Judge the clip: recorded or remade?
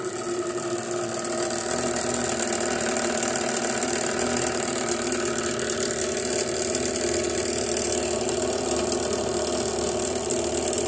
recorded